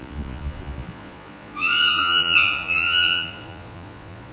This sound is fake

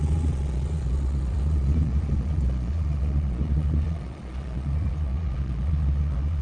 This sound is fake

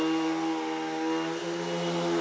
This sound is real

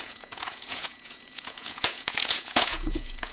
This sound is fake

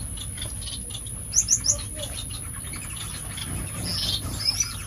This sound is real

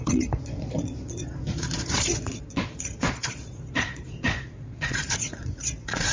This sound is fake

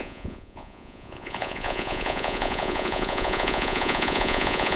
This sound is fake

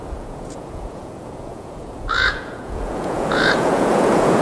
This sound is fake